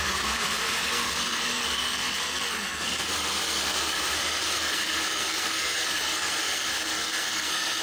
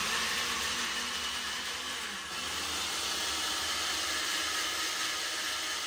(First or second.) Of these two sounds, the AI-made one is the first